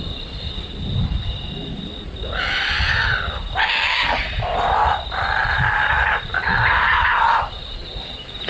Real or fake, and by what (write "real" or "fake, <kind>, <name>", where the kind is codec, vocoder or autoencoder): real